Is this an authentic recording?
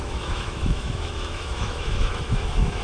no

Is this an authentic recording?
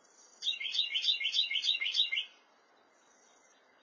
yes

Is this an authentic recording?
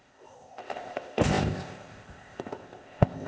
no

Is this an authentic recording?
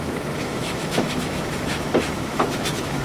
no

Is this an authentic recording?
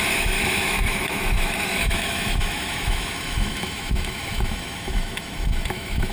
no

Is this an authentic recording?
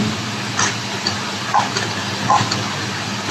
yes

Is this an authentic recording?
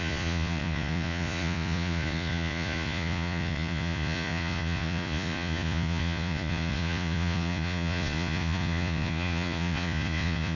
no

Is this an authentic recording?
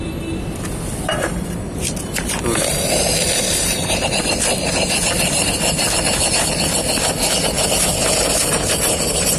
no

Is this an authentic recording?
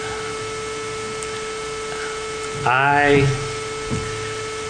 yes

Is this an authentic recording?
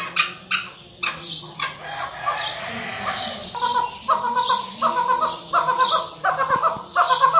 yes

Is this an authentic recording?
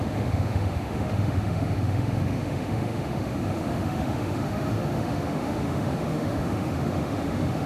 no